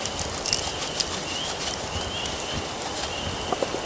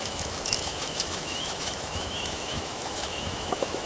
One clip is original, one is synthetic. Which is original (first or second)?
first